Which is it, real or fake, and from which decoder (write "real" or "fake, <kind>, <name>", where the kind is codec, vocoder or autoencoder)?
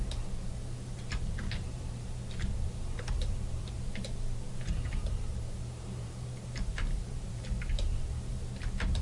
fake, vocoder, BigVGAN v2